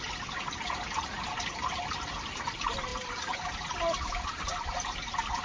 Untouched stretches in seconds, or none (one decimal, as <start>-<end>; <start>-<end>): 0.0-2.9; 3.4-5.4